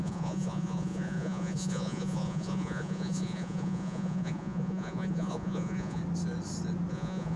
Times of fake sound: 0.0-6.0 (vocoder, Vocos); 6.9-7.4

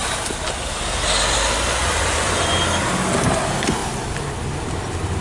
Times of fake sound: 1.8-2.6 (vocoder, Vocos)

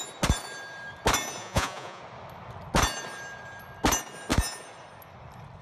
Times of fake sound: 1.4-2.0 (vocoder, Vocos)

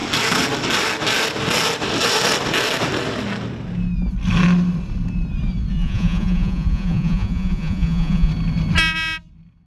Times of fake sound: 5.7-8.3 (vocoder, Vocos)

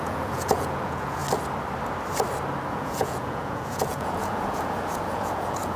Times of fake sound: 0.0-1.2 (vocoder, Vocos); 2.7-5.8